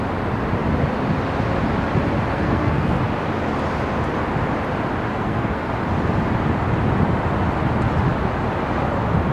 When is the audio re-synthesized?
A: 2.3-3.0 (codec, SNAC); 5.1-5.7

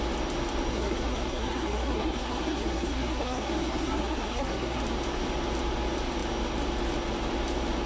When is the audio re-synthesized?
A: 0.7-4.8 (codec, SNAC)